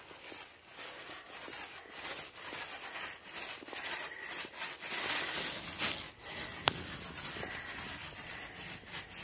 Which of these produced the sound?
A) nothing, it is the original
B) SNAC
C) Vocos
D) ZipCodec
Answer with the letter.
A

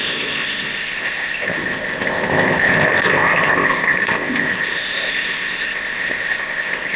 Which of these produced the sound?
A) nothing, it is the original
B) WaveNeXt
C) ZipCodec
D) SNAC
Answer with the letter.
C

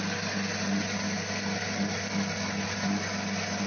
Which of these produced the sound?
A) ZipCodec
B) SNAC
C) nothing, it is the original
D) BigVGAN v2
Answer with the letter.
C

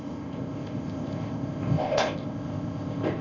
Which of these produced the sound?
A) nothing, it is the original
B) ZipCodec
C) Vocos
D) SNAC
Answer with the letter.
B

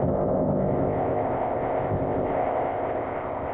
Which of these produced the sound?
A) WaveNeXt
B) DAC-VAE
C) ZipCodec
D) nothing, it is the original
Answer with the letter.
C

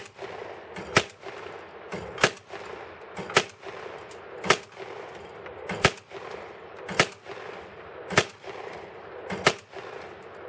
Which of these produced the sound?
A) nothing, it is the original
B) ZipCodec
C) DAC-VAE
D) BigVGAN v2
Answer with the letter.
A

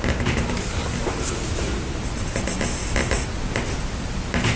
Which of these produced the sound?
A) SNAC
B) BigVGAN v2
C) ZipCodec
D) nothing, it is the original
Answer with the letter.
D